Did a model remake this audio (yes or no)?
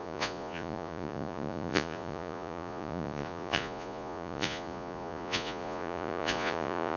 yes